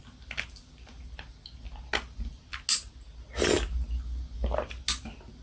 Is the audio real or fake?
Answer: real